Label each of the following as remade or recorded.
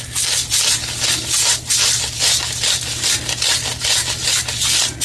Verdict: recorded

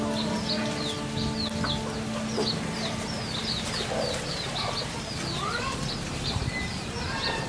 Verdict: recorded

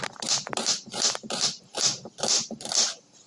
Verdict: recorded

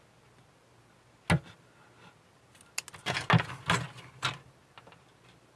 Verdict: recorded